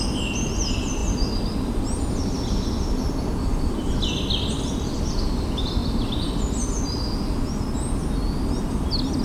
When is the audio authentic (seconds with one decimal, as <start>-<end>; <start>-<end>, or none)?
0.0-9.2